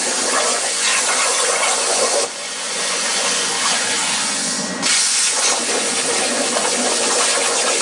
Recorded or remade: remade